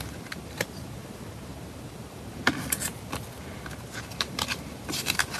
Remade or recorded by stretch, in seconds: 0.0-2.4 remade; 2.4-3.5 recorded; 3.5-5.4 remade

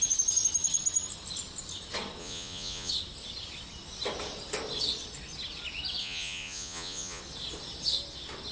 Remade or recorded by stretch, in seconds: 0.0-2.2 recorded; 2.2-2.9 remade; 2.9-6.0 recorded; 6.0-7.2 remade; 7.2-8.5 recorded

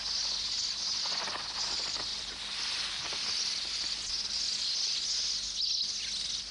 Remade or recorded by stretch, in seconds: 0.0-6.5 recorded

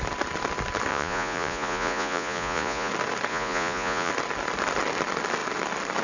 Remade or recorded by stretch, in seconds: 0.0-0.9 recorded; 0.9-2.9 remade; 2.9-3.3 recorded; 3.3-4.1 remade; 4.1-6.0 recorded

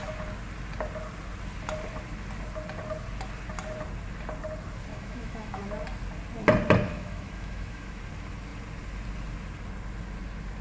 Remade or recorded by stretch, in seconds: 0.0-4.9 recorded; 4.9-5.6 remade; 5.6-6.9 recorded; 6.9-8.0 remade; 8.0-10.6 recorded

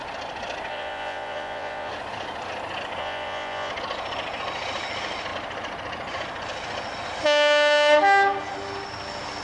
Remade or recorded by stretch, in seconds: 0.0-0.7 recorded; 0.7-1.9 remade; 1.9-3.0 recorded; 3.0-3.7 remade; 3.7-9.4 recorded